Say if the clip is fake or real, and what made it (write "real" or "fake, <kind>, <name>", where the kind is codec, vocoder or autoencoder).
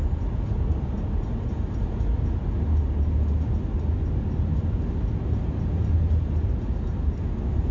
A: real